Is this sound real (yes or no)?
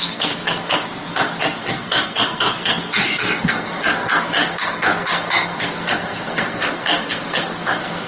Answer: no